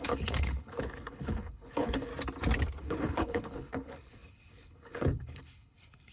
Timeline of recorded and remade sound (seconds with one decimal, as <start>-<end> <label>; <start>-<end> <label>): 0.0-2.1 remade; 2.1-2.8 recorded; 2.8-6.1 remade